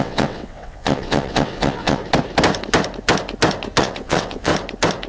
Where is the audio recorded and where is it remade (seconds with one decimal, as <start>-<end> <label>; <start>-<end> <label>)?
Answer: 0.0-2.0 remade; 2.0-3.8 recorded; 3.8-4.5 remade; 4.5-5.1 recorded